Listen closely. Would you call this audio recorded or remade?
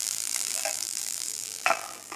remade